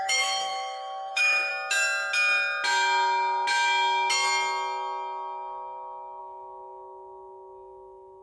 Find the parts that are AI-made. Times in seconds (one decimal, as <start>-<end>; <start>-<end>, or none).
0.0-1.5; 6.2-8.2